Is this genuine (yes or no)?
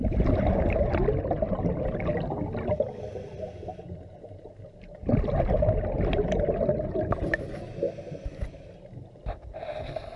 yes